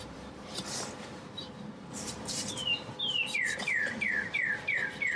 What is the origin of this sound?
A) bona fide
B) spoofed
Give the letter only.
B